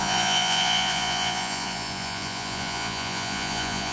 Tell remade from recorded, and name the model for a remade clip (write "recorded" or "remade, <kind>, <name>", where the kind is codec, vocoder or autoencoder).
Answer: remade, vocoder, Vocos